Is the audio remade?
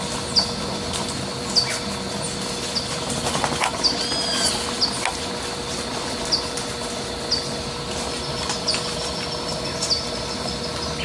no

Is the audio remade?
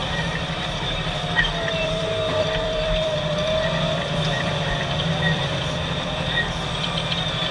yes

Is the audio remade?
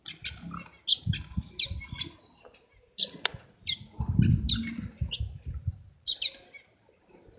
no